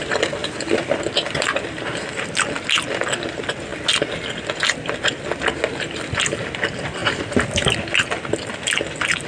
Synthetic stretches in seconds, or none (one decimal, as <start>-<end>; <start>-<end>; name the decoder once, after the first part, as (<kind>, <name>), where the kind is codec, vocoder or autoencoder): 0.4-2.0 (vocoder, BigVGAN v2)